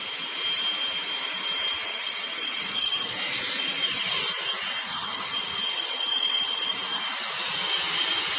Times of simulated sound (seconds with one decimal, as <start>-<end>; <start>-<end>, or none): 1.9-3.1; 4.9-6.7